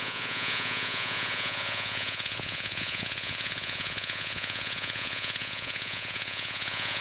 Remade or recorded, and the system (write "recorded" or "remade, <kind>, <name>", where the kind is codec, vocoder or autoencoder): remade, vocoder, Vocos